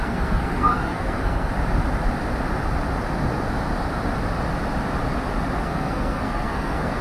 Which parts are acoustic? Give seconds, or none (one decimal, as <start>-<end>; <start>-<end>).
1.5-5.6